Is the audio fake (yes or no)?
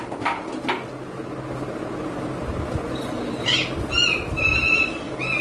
no